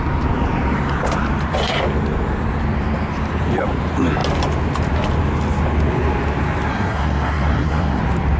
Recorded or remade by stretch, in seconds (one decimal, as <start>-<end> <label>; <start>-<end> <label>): 0.0-6.7 recorded; 6.7-8.0 remade; 8.0-8.4 recorded

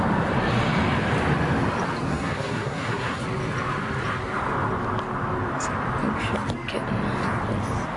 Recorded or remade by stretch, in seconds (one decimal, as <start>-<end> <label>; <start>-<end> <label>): 0.0-2.1 recorded; 2.1-3.2 remade; 3.2-8.0 recorded

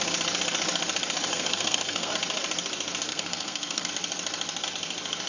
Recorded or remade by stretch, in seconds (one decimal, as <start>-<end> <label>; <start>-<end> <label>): 0.0-1.3 recorded; 1.3-2.1 remade; 2.1-3.1 recorded; 3.1-3.9 remade; 3.9-5.3 recorded

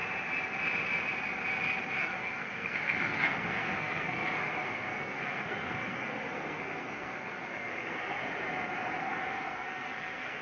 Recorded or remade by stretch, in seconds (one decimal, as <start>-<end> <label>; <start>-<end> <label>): 0.0-2.0 recorded; 2.0-8.2 remade; 8.2-9.0 recorded; 9.0-10.4 remade